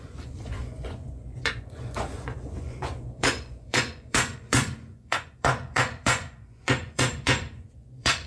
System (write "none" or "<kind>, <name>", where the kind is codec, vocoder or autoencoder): vocoder, Vocos